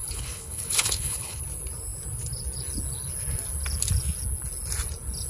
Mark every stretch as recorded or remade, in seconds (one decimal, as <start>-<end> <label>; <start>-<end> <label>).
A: 0.0-1.4 remade; 1.4-5.3 recorded